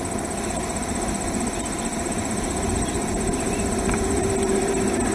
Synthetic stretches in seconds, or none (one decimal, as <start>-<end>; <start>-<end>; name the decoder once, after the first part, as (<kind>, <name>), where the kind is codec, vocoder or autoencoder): 1.9-5.1 (vocoder, BigVGAN v2)